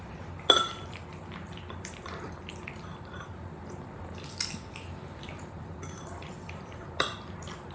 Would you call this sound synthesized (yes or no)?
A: no